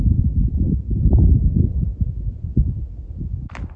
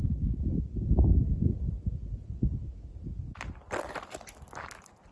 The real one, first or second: second